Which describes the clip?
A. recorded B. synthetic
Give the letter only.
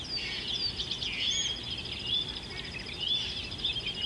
A